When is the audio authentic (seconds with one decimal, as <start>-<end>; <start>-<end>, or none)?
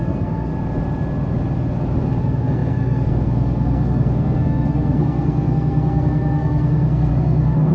0.5-2.2